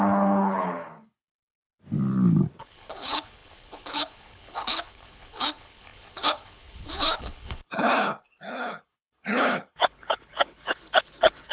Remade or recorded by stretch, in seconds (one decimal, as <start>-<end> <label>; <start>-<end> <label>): 0.0-1.3 remade; 1.3-2.5 recorded; 2.5-11.5 remade